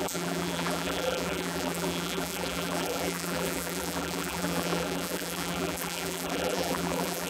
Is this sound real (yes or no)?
no